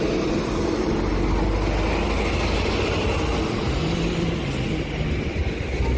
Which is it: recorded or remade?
recorded